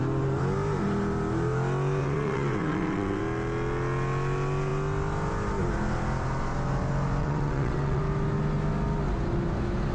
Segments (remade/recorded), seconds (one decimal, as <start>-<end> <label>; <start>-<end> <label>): 0.0-2.0 recorded; 2.0-3.2 remade; 3.2-7.2 recorded; 7.2-8.0 remade; 8.0-9.9 recorded